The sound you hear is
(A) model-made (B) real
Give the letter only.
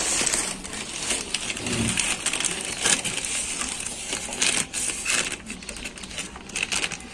B